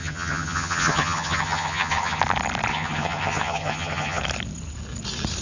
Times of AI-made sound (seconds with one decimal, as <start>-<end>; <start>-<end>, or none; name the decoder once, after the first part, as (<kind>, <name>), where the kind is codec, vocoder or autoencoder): 0.0-2.2 (vocoder, HiFi-GAN); 2.7-4.2